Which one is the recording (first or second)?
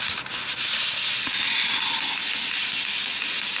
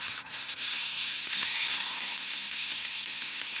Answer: first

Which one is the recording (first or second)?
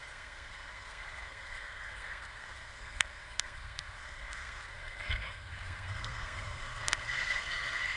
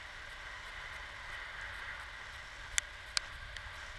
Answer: second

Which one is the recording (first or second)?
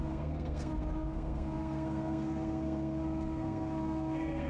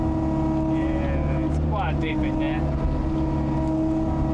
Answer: second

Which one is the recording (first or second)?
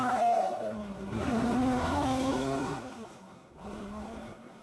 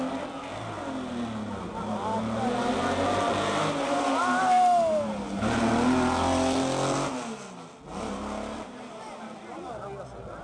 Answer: second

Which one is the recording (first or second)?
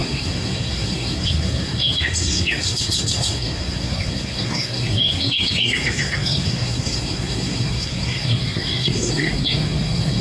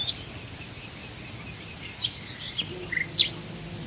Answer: second